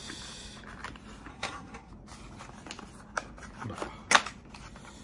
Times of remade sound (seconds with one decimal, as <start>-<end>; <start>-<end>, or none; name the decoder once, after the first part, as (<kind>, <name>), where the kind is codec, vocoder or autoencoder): 1.3-1.9 (codec, SNAC)